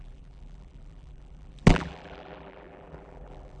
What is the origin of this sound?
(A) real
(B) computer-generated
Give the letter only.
B